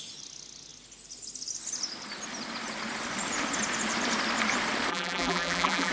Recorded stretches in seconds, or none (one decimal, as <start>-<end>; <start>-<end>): 0.0-4.9